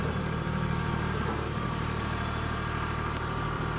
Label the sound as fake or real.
fake